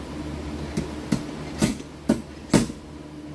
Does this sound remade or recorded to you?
recorded